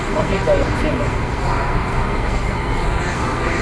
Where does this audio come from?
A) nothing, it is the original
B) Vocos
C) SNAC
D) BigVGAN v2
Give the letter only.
C